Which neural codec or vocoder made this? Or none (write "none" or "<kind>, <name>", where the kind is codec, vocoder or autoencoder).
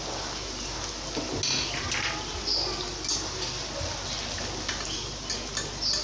none